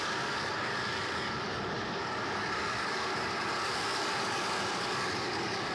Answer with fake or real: fake